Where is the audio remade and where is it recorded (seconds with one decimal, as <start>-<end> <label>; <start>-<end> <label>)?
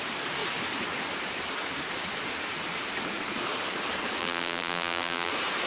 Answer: 0.0-4.2 recorded; 4.2-5.3 remade; 5.3-5.7 recorded